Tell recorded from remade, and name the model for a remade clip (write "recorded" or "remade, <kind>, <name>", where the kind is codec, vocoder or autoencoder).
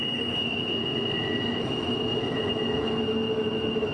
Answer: remade, autoencoder, DAC-VAE